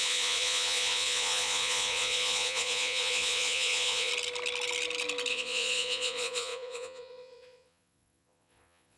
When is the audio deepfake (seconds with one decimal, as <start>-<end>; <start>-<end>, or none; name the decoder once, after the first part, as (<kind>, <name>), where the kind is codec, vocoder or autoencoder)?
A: 0.0-4.1 (vocoder, Vocos); 5.3-9.0